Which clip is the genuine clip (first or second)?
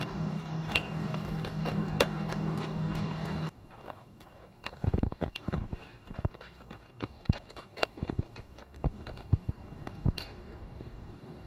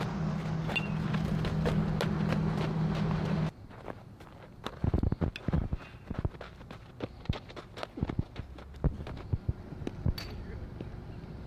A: second